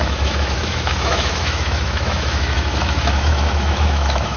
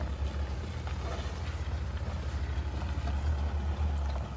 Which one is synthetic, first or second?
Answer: first